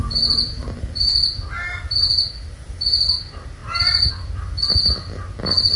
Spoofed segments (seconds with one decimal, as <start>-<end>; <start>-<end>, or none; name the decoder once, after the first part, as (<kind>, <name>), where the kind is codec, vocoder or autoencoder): none